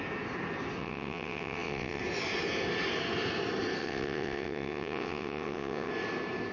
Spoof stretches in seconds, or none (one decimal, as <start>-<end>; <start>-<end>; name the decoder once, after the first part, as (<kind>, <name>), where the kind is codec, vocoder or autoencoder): 0.8-2.0 (vocoder, WaveNeXt); 3.8-5.9